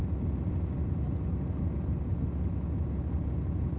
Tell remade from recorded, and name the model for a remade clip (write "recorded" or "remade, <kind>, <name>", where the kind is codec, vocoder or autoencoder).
recorded